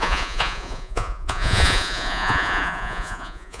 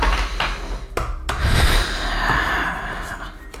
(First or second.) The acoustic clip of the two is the second